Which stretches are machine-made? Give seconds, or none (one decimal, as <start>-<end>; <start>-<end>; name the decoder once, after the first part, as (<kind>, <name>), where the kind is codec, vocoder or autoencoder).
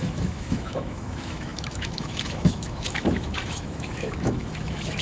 0.0-5.0 (autoencoder, DAC-VAE)